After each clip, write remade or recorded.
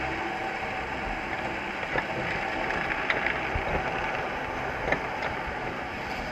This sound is recorded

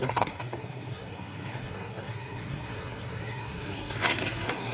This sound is remade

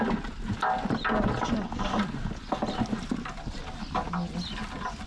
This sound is recorded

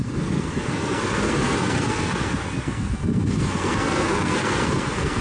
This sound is remade